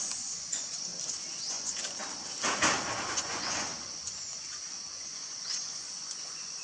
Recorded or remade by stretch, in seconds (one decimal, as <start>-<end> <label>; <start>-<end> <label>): 0.0-0.9 remade; 0.9-1.5 recorded; 1.5-2.0 remade; 2.0-3.1 recorded; 3.1-6.6 remade